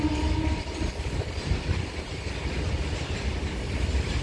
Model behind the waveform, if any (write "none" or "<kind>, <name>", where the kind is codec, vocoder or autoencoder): none